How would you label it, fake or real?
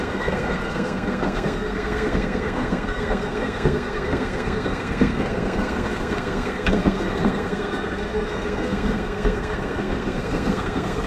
fake